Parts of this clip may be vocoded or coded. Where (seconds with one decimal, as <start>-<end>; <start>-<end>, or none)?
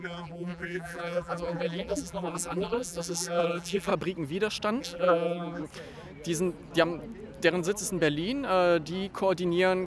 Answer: 0.0-3.9; 4.8-5.6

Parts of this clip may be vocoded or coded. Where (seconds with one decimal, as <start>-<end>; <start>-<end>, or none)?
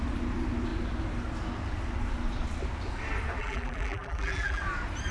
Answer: 3.4-4.6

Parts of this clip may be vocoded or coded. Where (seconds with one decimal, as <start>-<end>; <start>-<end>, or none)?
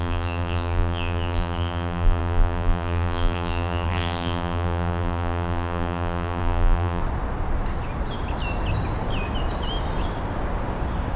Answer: 0.0-7.0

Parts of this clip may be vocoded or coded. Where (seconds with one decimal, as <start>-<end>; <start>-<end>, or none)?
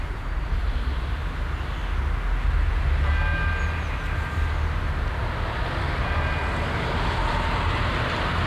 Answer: 0.0-1.2; 6.0-6.4; 7.2-8.5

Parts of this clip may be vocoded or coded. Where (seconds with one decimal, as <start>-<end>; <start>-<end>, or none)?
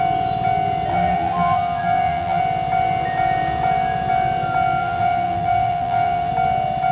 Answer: 0.9-2.4; 4.8-6.3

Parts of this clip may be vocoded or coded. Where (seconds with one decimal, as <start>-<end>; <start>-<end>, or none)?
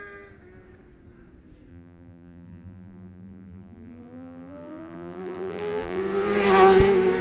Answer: 1.7-6.0